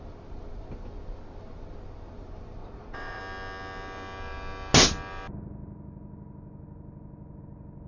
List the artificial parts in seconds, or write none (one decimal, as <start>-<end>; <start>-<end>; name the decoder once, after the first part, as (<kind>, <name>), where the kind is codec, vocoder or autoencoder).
2.6-3.2 (vocoder, Vocos)